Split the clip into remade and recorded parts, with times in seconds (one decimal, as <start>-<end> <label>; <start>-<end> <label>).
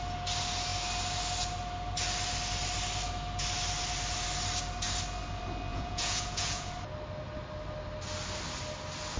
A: 0.0-5.7 recorded; 5.7-6.7 remade; 6.7-9.2 recorded